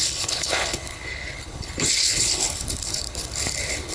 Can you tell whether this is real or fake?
fake